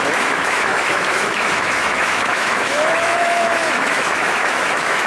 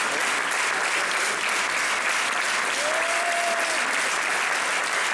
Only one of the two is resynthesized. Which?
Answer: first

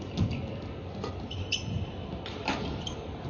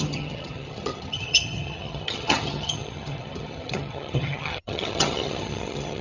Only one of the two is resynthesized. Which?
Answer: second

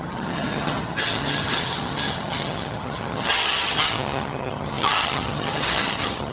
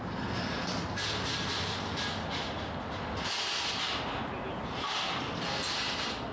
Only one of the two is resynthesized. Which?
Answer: first